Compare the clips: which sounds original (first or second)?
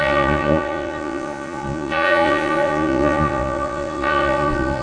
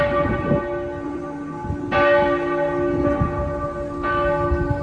second